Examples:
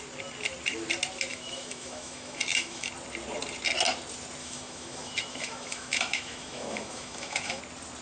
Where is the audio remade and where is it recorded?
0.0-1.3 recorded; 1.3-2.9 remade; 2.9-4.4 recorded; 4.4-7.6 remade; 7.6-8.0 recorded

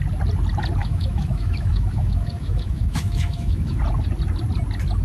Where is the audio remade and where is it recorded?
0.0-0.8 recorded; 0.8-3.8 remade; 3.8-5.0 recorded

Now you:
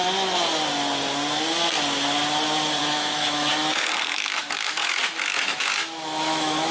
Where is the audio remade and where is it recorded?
0.0-2.8 recorded; 2.8-6.7 remade

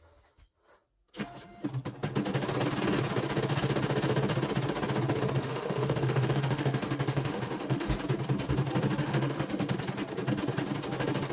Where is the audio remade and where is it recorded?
0.0-5.4 recorded; 5.4-7.9 remade; 7.9-9.0 recorded; 9.0-9.8 remade; 9.8-11.3 recorded